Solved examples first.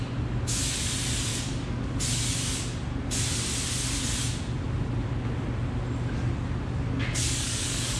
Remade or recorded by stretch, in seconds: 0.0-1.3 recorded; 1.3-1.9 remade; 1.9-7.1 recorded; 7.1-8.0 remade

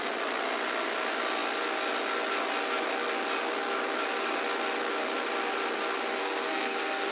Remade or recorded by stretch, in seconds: 0.0-6.2 recorded; 6.2-7.1 remade